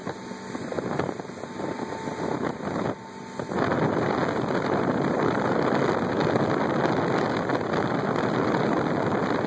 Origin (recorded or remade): recorded